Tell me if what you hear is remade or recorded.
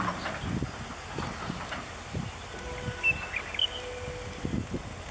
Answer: recorded